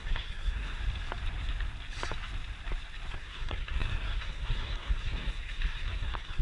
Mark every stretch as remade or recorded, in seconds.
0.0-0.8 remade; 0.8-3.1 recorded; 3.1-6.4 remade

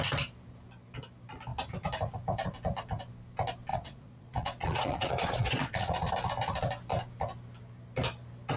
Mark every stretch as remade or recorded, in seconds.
0.0-3.7 recorded; 3.7-6.1 remade; 6.1-8.6 recorded

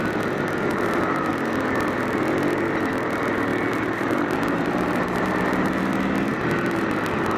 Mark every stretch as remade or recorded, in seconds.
0.0-0.7 recorded; 0.7-1.3 remade; 1.3-3.5 recorded; 3.5-5.8 remade; 5.8-6.3 recorded; 6.3-7.4 remade

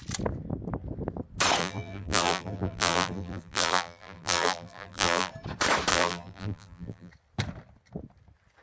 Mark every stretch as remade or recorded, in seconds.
0.0-1.6 recorded; 1.6-5.3 remade; 5.3-5.9 recorded; 5.9-7.1 remade; 7.1-8.6 recorded

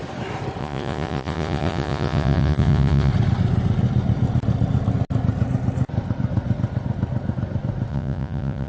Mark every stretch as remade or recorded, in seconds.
0.0-0.6 recorded; 0.6-3.1 remade; 3.1-7.9 recorded; 7.9-8.7 remade

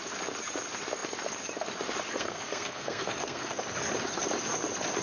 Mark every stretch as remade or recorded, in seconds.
0.0-2.1 recorded; 2.1-3.6 remade; 3.6-5.0 recorded

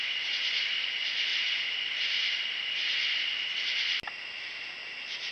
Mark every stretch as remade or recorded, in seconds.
0.0-5.3 recorded